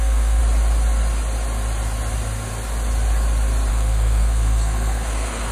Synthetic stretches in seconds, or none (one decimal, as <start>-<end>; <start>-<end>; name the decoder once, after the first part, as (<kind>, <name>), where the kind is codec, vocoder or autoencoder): 0.0-0.4 (codec, SNAC); 3.7-5.5